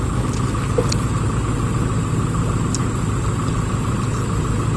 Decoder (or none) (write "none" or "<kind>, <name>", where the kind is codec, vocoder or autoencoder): none